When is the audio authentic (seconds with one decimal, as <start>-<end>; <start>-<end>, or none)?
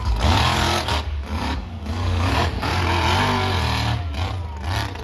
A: 2.7-5.0